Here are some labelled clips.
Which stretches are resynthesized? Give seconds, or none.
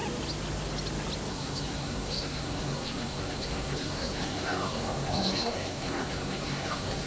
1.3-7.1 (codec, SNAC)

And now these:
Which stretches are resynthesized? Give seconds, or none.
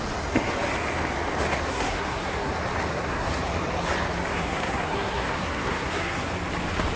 1.7-2.5 (codec, SNAC); 2.9-3.4; 4.3-6.3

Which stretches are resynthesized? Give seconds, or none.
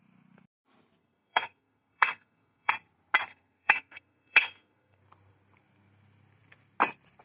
1.0-2.7 (codec, SNAC); 3.3-5.0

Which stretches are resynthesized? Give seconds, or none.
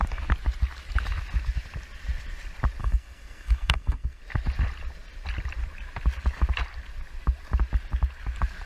2.8-4.2 (codec, SNAC)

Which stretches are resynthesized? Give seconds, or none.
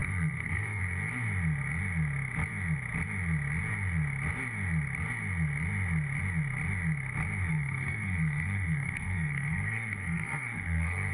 0.0-0.8 (codec, SNAC); 7.5-11.1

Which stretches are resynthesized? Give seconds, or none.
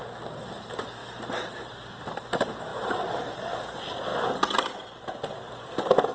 none